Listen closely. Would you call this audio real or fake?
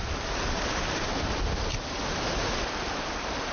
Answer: real